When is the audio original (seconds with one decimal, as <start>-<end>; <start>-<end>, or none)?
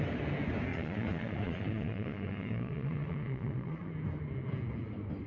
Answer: 0.0-0.7; 3.9-5.3